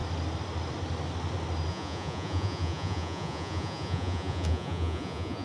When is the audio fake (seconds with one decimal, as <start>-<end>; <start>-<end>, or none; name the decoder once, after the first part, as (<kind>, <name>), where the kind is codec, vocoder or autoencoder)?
1.7-5.4 (vocoder, Vocos)

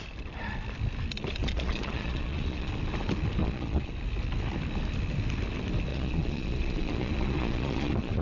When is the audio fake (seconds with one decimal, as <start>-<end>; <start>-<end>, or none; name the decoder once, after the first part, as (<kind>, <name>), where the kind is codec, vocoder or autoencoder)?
1.4-2.7 (vocoder, Vocos); 3.4-3.9; 5.9-8.2